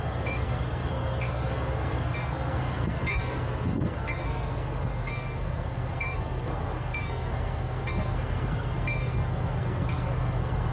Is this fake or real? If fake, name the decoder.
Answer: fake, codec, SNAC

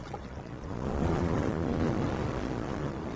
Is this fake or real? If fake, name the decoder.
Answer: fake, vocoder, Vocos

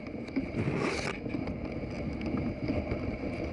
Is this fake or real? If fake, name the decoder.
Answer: real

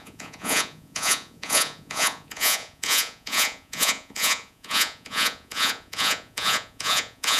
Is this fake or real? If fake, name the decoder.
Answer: fake, vocoder, Vocos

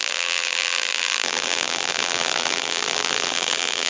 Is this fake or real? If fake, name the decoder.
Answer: fake, vocoder, BigVGAN v2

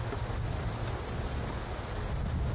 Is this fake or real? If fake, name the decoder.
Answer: real